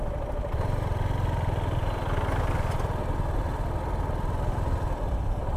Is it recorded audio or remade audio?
recorded